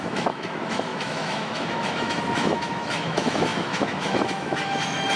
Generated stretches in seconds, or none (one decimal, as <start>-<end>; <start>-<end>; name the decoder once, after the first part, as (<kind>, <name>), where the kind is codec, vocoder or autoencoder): 0.0-5.2 (autoencoder, DAC-VAE)